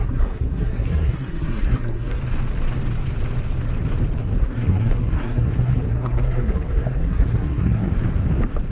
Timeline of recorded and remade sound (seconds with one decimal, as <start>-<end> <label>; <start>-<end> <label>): 0.0-2.2 remade; 2.2-4.2 recorded; 4.2-7.9 remade; 7.9-8.7 recorded